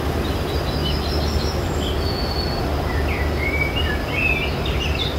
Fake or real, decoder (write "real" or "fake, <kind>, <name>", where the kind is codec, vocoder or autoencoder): real